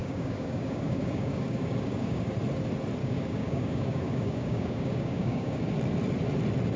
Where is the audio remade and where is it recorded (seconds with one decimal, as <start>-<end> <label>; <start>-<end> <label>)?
0.0-2.3 remade; 2.3-3.0 recorded; 3.0-5.6 remade; 5.6-6.8 recorded